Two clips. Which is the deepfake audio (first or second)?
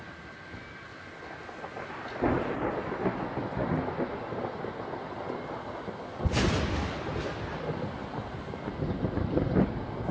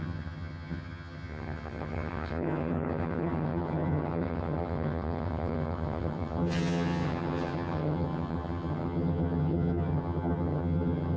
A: second